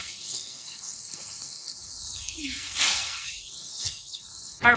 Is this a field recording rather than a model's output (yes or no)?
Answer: no